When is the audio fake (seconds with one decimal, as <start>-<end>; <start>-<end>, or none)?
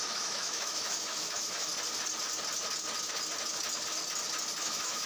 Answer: 0.0-1.7; 4.6-5.1